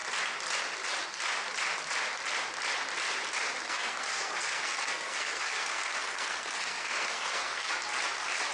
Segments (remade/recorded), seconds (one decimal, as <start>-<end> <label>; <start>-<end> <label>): 0.0-3.6 recorded; 3.6-7.7 remade; 7.7-8.5 recorded